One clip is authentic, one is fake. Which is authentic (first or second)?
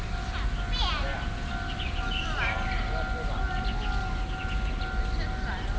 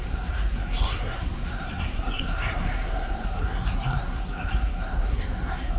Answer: first